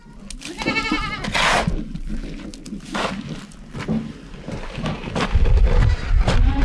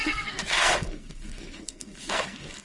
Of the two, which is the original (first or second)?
first